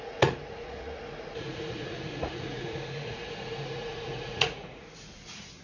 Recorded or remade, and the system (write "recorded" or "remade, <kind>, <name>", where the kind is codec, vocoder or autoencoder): remade, vocoder, Vocos